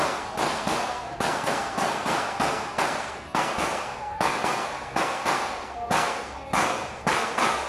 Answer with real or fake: fake